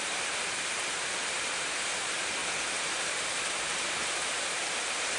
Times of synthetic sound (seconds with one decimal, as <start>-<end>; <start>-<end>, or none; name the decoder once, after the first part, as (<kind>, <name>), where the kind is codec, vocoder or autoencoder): 0.0-2.4 (vocoder, BigVGAN v2); 3.0-5.2